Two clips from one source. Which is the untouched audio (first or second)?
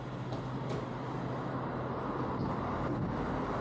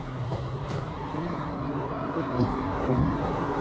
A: first